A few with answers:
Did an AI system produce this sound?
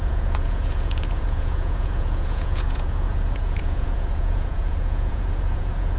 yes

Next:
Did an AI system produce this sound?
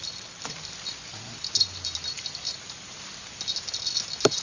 no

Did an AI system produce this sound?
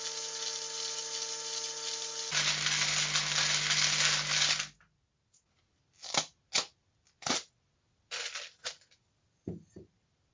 no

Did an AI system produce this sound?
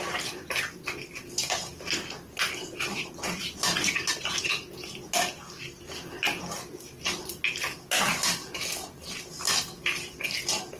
no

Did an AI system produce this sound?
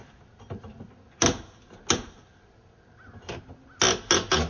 no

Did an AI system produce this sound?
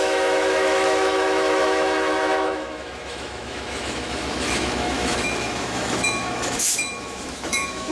yes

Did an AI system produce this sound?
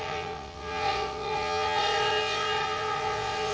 yes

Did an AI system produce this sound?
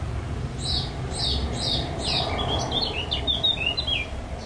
no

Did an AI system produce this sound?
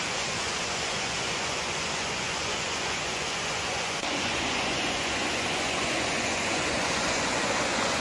yes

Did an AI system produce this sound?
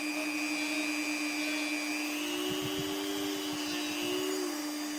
no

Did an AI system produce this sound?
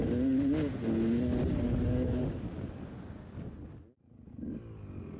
no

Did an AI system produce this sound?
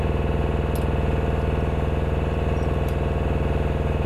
no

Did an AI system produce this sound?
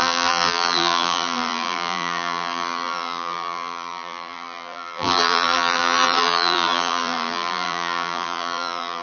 yes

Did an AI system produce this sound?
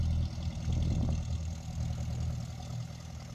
no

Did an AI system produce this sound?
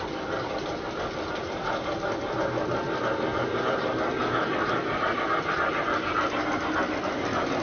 no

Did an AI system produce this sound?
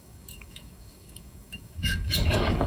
yes